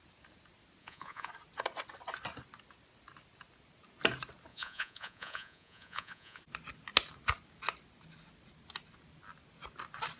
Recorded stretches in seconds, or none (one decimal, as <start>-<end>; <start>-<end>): 0.0-0.8; 1.3-4.5; 6.4-10.2